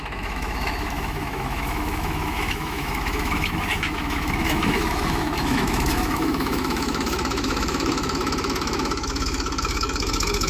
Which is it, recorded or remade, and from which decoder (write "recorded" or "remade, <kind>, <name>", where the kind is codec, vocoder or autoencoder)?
remade, autoencoder, DAC-VAE